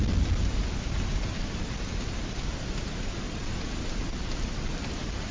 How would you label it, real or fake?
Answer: real